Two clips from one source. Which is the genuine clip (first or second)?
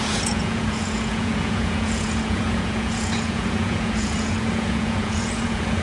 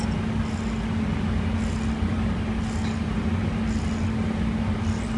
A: second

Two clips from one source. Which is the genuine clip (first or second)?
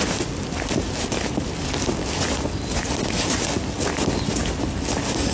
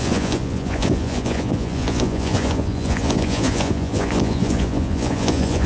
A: first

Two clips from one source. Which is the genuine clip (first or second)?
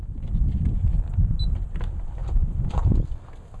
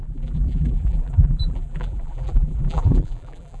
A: first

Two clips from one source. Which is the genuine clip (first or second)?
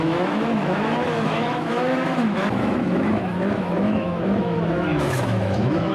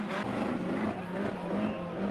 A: second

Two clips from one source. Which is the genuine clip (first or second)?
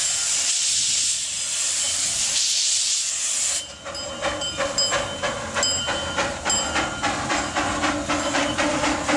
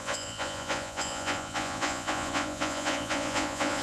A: first